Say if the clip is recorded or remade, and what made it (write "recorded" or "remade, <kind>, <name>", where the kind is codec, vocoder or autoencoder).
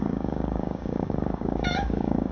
remade, codec, DAC